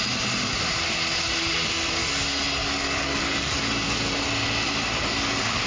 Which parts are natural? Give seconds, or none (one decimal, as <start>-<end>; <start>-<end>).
0.0-2.6; 3.6-5.7